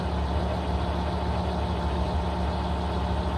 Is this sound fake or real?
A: real